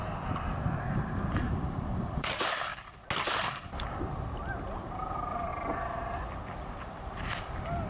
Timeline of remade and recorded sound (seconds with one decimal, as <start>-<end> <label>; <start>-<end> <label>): 0.0-0.8 recorded; 0.8-2.7 remade; 2.7-4.7 recorded; 4.7-5.5 remade; 5.5-6.8 recorded; 6.8-7.9 remade